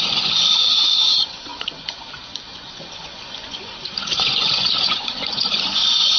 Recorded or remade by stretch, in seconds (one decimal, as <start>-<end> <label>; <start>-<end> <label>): 0.0-6.2 remade